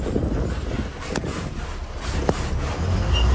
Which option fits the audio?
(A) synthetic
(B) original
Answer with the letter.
B